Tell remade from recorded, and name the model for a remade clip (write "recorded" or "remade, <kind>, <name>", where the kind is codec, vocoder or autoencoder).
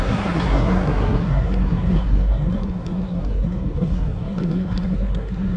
remade, codec, SNAC